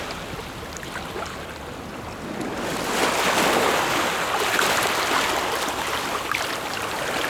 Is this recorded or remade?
recorded